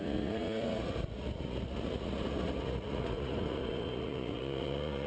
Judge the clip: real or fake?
fake